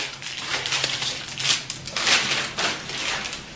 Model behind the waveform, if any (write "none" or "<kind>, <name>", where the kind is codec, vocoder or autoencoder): none